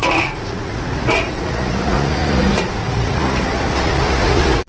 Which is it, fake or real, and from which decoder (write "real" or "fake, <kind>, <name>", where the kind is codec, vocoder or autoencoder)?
fake, vocoder, Vocos